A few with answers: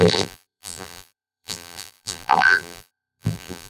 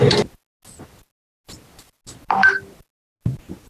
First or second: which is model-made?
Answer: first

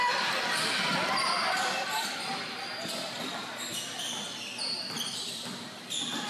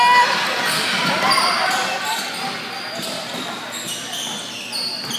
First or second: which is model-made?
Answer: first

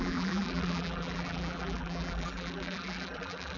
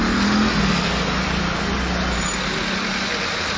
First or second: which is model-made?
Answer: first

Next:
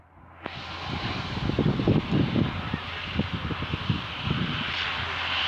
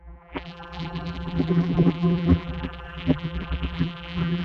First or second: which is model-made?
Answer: second